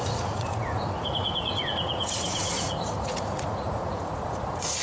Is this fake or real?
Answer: fake